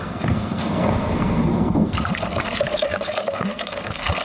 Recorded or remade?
remade